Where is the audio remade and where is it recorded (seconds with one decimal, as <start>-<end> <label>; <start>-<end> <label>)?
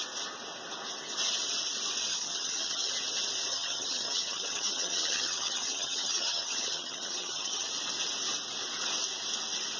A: 0.0-2.1 recorded; 2.1-2.9 remade; 2.9-3.5 recorded; 3.5-7.7 remade; 7.7-9.8 recorded